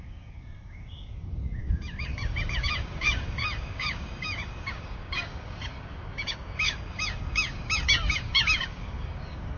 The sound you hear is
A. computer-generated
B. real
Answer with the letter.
A